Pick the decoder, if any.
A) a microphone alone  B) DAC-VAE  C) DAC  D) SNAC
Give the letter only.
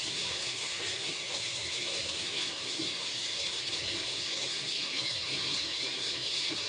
D